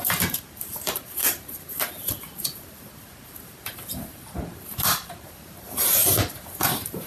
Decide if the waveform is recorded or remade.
remade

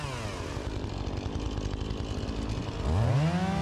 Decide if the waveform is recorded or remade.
recorded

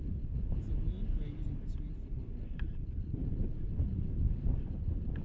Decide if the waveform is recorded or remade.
remade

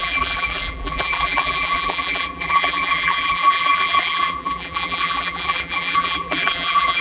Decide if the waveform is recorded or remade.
remade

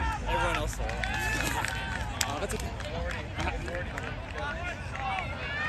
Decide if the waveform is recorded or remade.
recorded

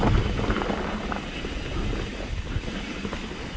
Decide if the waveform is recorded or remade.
recorded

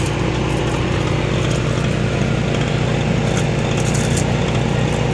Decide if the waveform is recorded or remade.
recorded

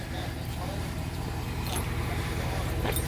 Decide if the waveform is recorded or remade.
remade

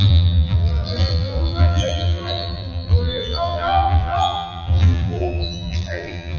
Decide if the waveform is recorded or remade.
remade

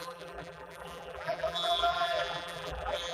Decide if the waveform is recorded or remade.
remade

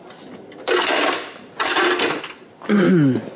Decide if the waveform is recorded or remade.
recorded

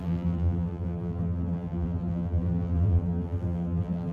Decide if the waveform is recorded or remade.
remade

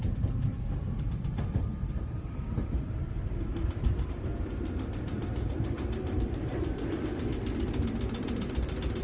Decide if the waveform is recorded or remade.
remade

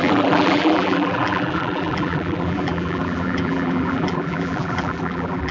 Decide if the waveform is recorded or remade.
remade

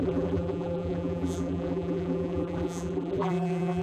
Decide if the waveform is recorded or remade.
remade